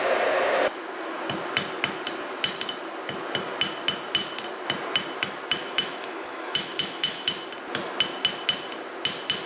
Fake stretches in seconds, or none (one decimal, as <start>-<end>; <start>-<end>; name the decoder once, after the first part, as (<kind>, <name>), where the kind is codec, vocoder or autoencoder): 5.6-7.3 (autoencoder, DAC-VAE)